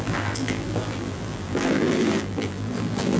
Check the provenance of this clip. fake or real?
fake